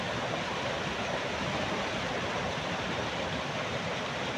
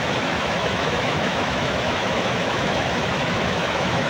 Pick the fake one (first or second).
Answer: second